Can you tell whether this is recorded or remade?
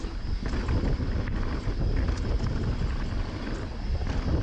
recorded